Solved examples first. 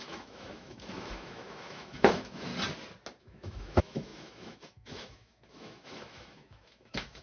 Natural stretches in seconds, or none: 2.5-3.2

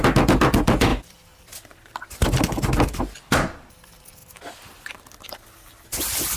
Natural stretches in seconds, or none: 0.0-6.4

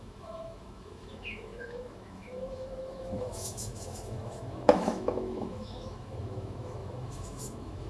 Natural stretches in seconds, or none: none

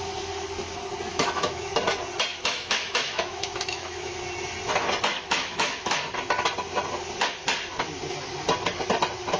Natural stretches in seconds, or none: 0.0-1.1; 1.7-2.3; 4.1-5.1; 6.0-9.4

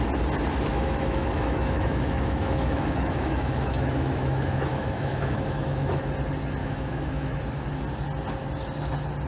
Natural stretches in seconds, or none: 0.0-0.7; 6.0-6.6; 7.4-9.3